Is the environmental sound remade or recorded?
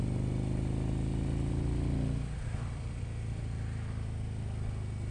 recorded